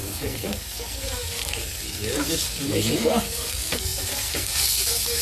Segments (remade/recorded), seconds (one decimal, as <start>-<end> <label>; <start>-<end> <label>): 0.0-5.2 remade